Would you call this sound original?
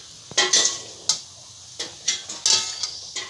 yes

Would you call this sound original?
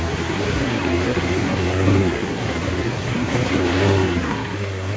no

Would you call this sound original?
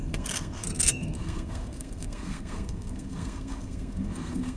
no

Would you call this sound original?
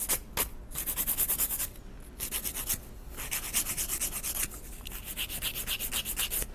yes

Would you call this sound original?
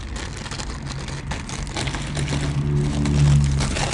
yes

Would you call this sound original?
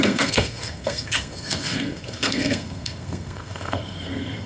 no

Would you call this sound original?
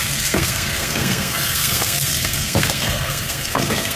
no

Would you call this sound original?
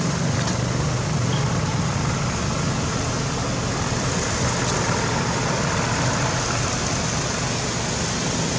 yes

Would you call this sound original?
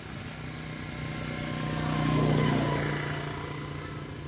yes